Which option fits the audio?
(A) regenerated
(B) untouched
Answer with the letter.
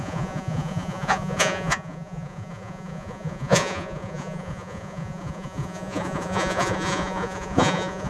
A